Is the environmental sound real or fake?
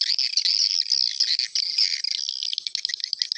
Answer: real